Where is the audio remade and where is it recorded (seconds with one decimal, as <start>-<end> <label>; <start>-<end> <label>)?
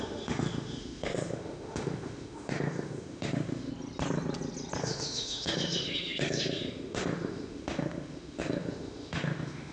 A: 0.0-3.7 remade; 3.7-4.8 recorded; 4.8-9.7 remade